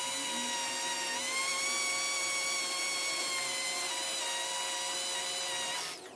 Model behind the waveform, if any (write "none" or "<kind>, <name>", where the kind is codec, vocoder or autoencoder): none